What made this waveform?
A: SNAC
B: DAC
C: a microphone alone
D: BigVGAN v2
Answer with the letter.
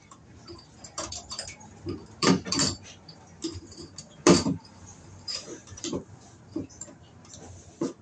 D